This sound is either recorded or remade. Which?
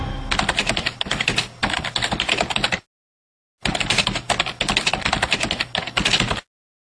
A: recorded